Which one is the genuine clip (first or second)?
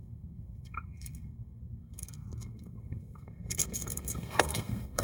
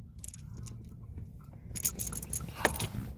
second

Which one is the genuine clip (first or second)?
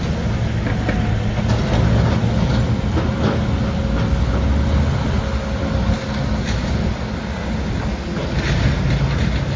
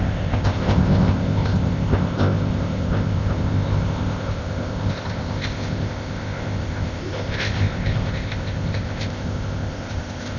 first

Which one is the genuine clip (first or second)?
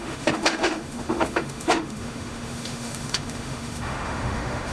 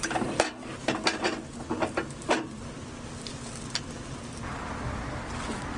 second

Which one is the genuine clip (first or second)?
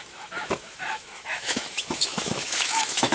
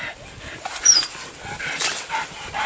second